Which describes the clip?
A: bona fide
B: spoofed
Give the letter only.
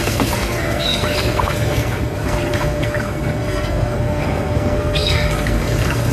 B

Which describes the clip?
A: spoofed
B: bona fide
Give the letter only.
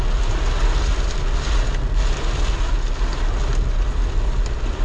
B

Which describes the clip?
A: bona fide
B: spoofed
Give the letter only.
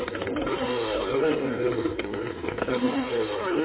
B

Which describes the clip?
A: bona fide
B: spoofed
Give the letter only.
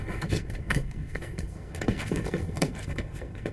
B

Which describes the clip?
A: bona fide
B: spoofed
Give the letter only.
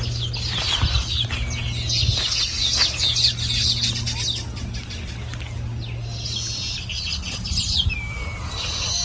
A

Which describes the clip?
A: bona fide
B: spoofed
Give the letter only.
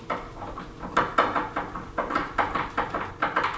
A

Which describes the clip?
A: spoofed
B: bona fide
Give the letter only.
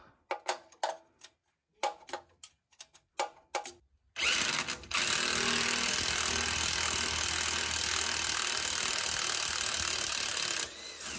B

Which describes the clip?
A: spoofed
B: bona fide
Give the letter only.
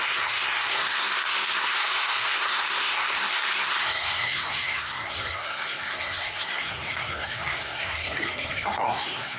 A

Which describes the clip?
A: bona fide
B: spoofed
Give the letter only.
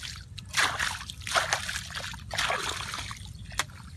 A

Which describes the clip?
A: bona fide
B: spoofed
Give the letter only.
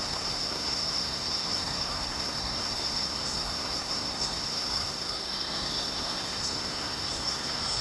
B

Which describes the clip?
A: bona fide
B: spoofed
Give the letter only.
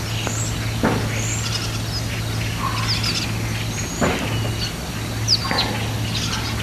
A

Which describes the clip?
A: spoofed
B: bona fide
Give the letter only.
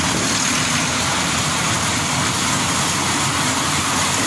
B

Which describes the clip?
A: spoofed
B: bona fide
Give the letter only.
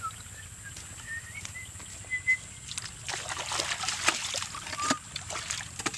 B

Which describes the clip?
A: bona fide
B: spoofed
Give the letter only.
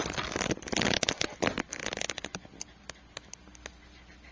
A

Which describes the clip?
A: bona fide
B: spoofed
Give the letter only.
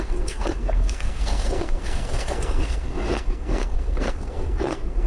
B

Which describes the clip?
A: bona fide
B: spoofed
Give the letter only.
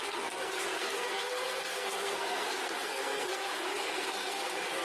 B